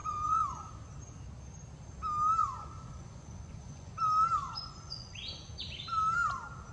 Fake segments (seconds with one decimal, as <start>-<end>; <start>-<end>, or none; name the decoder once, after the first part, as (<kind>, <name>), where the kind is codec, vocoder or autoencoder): 0.0-0.7 (vocoder, Vocos); 2.4-3.9; 4.4-5.5